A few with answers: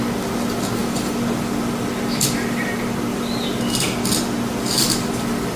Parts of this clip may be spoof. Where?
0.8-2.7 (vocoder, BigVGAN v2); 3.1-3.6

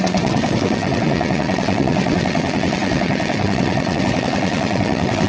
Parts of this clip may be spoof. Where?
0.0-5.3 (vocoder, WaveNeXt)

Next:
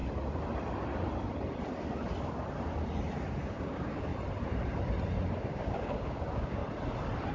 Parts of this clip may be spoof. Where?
3.6-4.1 (codec, DAC); 5.4-6.6

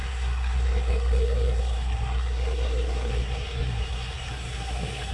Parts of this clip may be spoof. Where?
0.0-5.1 (codec, SNAC)